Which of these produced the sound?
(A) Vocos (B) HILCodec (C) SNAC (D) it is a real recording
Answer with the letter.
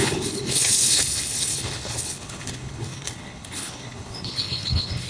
B